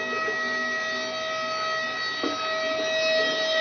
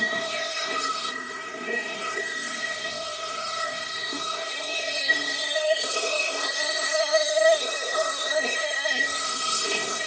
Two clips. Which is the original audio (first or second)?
first